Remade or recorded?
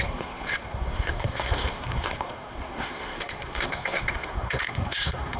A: remade